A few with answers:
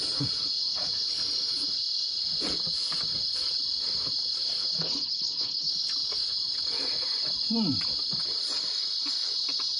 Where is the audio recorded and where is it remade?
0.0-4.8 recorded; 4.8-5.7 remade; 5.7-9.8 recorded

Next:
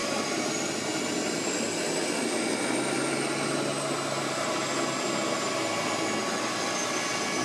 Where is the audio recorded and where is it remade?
0.0-7.4 recorded

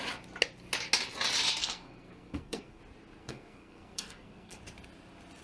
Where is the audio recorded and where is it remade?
0.0-1.6 recorded; 1.6-2.8 remade; 2.8-3.2 recorded; 3.2-4.6 remade; 4.6-5.4 recorded